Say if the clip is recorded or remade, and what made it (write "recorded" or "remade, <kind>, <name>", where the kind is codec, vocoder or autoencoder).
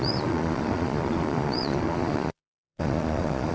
remade, vocoder, Vocos